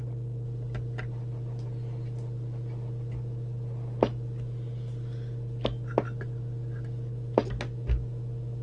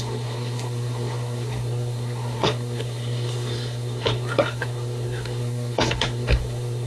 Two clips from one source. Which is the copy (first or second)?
second